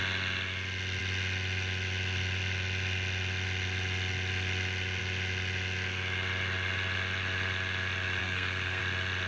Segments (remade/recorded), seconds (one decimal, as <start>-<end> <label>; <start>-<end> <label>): 0.0-8.2 recorded; 8.2-8.8 remade; 8.8-9.3 recorded